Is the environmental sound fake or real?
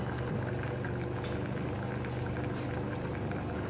real